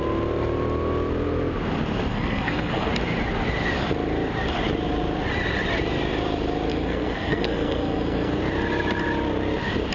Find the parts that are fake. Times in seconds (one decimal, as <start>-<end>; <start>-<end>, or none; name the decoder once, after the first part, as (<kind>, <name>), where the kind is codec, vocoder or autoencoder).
2.1-2.9 (codec, SNAC); 6.7-8.4